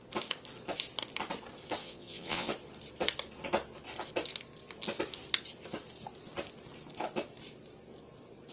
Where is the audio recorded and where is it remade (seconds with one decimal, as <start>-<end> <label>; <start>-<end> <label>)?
0.0-1.8 recorded; 1.8-2.5 remade; 2.5-8.5 recorded